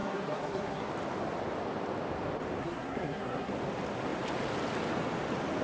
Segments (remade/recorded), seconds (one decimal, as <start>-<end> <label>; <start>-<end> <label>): 0.0-0.9 remade; 0.9-2.6 recorded; 2.6-3.5 remade; 3.5-5.6 recorded